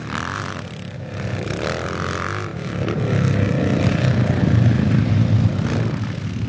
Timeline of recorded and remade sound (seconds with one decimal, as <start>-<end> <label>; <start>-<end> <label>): 0.0-6.5 recorded